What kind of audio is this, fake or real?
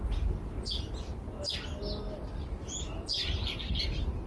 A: real